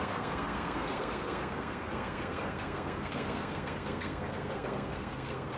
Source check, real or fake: fake